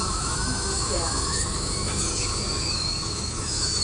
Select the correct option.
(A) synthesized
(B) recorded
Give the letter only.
A